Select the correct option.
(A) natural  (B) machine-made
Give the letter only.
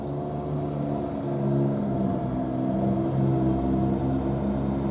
A